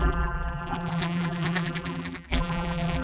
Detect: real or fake fake